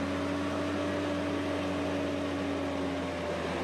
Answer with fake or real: real